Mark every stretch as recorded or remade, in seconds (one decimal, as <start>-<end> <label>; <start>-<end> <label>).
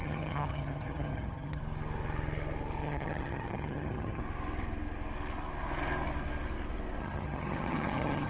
0.0-1.6 remade; 1.6-2.8 recorded; 2.8-4.2 remade; 4.2-7.0 recorded; 7.0-8.3 remade